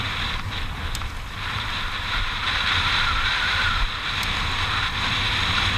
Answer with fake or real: fake